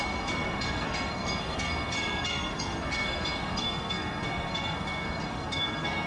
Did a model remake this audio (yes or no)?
yes